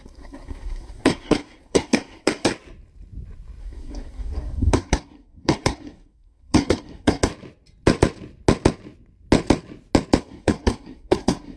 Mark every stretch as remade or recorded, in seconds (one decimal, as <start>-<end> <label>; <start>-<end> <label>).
0.0-2.5 remade; 2.5-3.6 recorded; 3.6-7.3 remade; 7.3-10.2 recorded; 10.2-11.6 remade